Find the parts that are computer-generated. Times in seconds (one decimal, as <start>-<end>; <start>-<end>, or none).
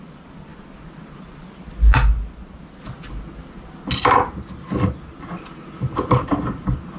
none